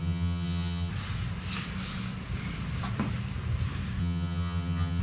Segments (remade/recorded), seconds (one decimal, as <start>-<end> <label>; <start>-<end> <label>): 0.0-0.9 remade; 0.9-4.0 recorded; 4.0-5.0 remade